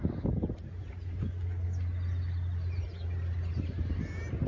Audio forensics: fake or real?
real